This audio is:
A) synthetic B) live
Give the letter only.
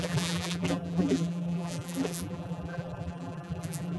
A